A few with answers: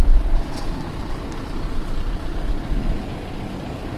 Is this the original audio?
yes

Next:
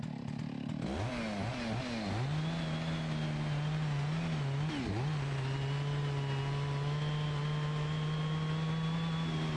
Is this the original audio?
yes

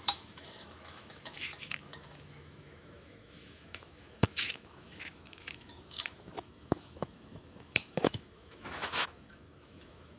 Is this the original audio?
no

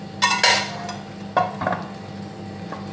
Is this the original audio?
yes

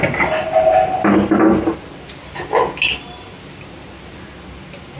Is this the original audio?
yes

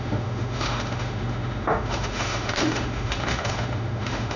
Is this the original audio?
no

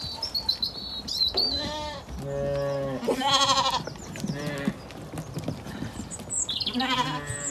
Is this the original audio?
yes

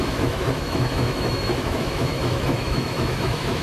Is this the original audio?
no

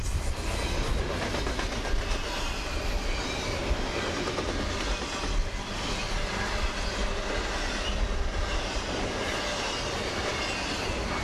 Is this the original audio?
yes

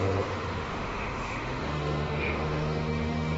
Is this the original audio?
no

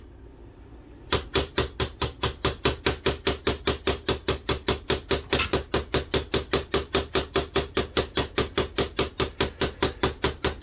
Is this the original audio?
yes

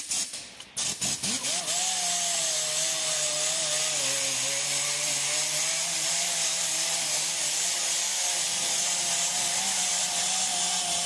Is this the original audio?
yes